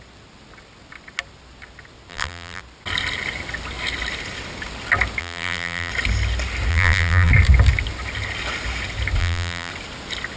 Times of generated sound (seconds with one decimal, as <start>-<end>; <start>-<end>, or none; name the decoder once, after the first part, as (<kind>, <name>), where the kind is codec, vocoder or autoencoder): 2.1-2.6 (vocoder, BigVGAN v2); 5.2-5.9; 6.7-7.3; 9.2-9.7